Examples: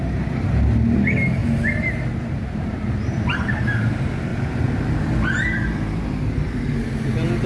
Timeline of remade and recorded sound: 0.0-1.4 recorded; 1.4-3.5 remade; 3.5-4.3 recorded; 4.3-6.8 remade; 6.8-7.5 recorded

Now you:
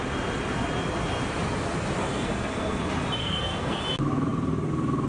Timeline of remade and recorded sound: 0.0-2.1 recorded; 2.1-2.8 remade; 2.8-3.2 recorded; 3.2-3.8 remade; 3.8-5.1 recorded

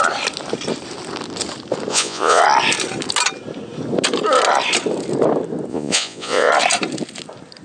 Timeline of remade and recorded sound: 0.0-1.9 recorded; 1.9-2.4 remade; 2.4-5.7 recorded; 5.7-6.5 remade; 6.5-7.6 recorded

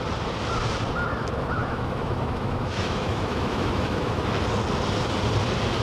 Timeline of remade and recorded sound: 0.0-1.6 recorded; 1.6-4.2 remade; 4.2-5.8 recorded

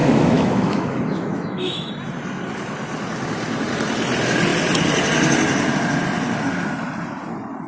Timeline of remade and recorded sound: 0.0-1.9 remade; 1.9-7.7 recorded

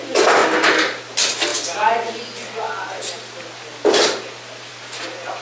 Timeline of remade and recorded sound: 0.0-5.4 recorded